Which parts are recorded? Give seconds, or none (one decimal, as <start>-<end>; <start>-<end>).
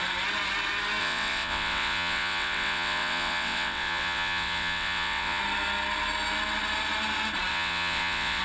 0.0-1.0; 5.4-7.5